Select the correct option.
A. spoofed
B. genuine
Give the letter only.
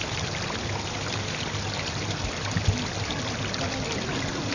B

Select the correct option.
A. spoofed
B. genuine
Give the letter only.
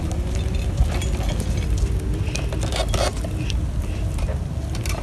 B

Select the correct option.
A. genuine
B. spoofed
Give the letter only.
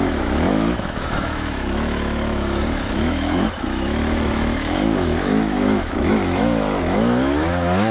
B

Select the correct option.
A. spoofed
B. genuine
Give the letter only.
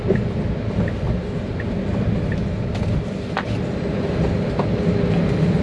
B